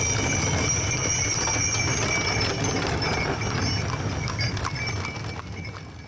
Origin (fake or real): real